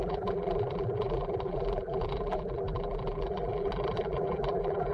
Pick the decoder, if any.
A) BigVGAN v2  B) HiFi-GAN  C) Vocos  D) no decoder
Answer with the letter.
A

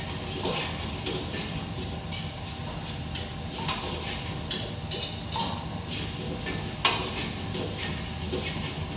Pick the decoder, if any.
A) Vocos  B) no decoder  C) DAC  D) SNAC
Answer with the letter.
B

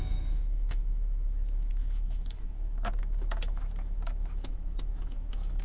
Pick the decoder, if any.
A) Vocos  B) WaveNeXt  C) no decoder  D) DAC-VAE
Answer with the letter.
D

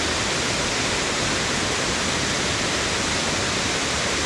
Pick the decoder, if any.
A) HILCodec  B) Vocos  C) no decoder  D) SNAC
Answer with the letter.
C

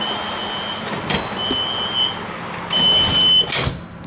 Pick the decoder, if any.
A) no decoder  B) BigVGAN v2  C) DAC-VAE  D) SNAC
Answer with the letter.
A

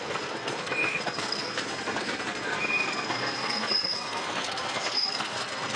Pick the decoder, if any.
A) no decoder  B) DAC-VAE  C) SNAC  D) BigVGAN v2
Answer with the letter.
C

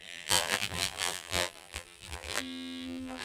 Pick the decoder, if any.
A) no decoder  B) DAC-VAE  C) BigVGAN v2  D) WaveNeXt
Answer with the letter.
C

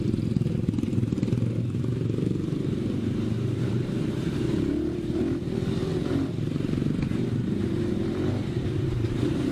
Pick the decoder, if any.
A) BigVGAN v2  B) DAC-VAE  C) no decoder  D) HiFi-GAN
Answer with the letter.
A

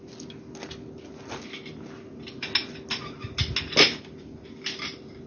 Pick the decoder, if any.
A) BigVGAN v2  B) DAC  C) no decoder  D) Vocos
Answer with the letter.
C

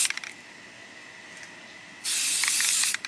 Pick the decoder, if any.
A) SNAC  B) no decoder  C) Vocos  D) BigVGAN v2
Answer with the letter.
B